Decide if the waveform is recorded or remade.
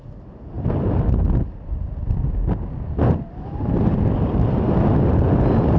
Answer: recorded